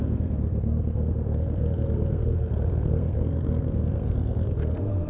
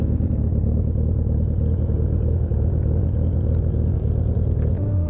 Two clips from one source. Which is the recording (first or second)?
second